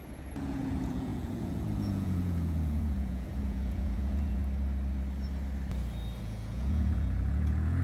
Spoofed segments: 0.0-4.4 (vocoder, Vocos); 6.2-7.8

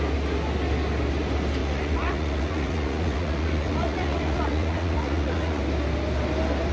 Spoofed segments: 1.6-5.6 (vocoder, Vocos)

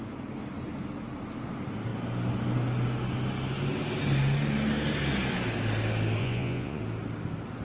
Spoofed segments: 6.2-6.8 (vocoder, Vocos)